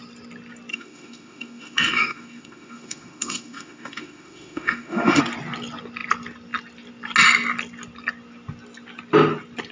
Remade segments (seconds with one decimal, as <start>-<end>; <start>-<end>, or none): 0.7-5.2